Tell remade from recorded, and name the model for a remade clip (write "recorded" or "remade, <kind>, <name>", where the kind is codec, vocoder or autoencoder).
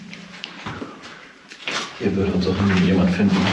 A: remade, vocoder, BigVGAN v2